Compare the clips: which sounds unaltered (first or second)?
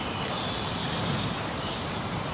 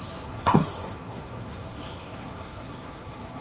first